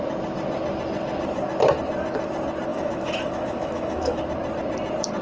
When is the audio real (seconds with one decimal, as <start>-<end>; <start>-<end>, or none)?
0.0-2.7; 4.2-5.2